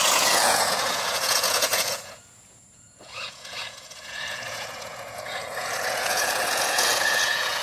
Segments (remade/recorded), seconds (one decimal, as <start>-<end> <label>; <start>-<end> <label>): 0.0-7.6 remade